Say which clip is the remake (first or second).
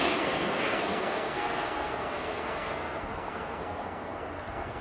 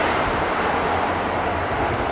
first